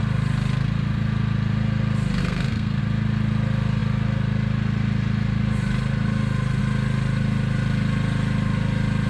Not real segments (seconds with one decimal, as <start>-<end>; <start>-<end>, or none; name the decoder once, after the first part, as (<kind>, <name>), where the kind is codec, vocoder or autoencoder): 2.2-2.8 (codec, SNAC)